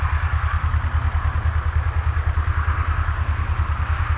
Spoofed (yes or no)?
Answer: no